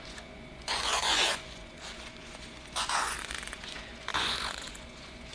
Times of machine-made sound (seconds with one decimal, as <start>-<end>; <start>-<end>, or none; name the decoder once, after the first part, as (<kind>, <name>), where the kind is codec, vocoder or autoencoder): 0.0-5.3 (vocoder, Vocos)